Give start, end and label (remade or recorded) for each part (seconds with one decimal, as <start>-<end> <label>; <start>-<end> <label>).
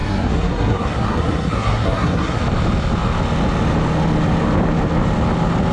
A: 0.0-2.4 remade; 2.4-5.7 recorded